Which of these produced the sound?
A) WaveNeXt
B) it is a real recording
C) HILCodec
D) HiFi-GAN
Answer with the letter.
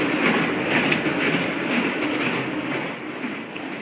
B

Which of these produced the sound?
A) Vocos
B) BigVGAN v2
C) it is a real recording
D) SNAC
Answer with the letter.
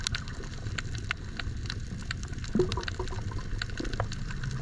C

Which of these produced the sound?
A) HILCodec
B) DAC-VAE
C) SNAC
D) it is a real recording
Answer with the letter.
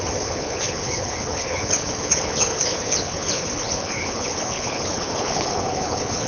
A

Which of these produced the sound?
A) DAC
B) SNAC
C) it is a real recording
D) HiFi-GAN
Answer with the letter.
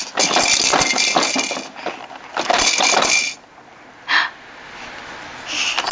C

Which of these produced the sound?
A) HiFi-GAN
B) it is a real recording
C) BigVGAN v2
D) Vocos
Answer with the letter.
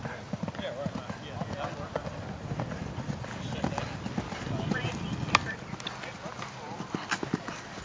B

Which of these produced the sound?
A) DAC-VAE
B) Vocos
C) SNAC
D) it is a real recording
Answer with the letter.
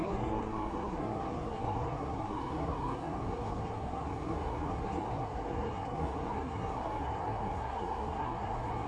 C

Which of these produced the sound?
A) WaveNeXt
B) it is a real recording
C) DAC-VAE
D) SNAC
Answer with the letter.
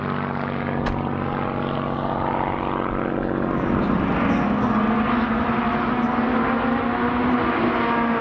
B